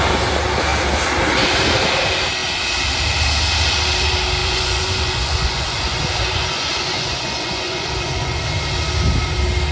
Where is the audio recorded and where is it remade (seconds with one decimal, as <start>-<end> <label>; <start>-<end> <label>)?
0.0-4.4 recorded; 4.4-8.4 remade; 8.4-9.7 recorded